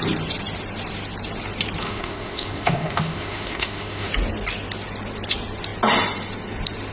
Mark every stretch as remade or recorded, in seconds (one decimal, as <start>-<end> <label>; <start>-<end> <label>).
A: 0.0-1.8 recorded; 1.8-4.1 remade; 4.1-6.9 recorded